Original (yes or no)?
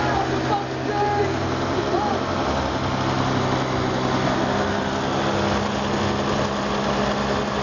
yes